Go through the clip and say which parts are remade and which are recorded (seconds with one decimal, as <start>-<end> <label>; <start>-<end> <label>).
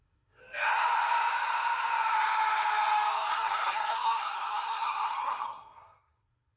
0.0-0.4 remade; 0.4-3.3 recorded; 3.3-6.6 remade